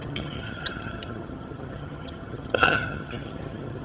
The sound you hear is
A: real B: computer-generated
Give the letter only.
B